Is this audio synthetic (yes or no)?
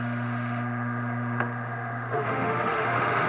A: yes